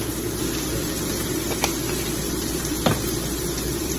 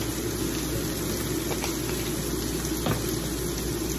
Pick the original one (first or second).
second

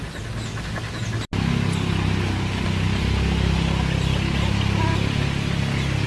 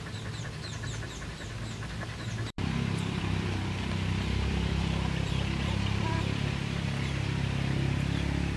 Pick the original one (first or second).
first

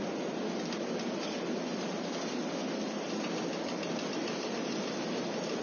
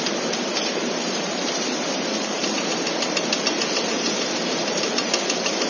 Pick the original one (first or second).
first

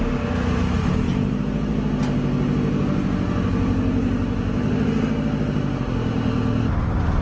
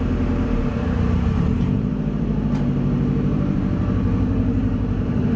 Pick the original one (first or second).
first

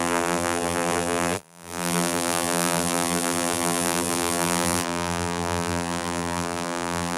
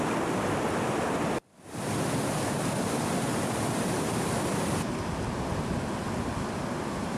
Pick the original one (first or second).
second